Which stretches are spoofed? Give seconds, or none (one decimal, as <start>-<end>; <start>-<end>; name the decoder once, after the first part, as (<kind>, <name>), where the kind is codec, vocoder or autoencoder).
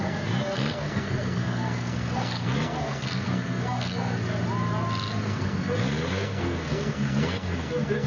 0.0-4.2 (codec, SNAC); 5.2-8.1